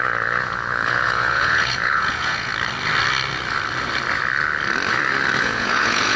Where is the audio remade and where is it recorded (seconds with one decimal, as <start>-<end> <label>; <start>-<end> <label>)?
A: 0.0-2.5 remade; 2.5-5.4 recorded; 5.4-6.2 remade